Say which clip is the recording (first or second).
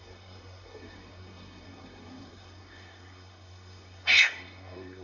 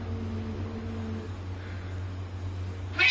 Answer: second